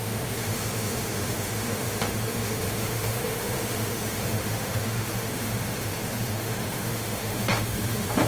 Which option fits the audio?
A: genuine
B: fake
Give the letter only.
B